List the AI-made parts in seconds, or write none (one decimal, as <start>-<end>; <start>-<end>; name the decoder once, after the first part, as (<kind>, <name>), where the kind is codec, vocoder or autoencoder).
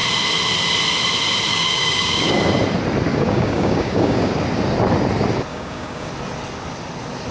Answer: 1.5-2.3 (codec, DAC); 3.1-4.3; 5.5-6.1